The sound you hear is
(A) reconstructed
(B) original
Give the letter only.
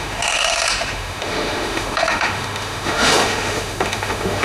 A